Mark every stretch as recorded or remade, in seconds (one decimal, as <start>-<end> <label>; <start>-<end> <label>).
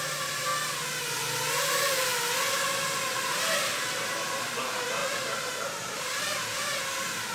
0.0-0.5 remade; 0.5-1.7 recorded; 1.7-2.1 remade; 2.1-3.2 recorded; 3.2-7.3 remade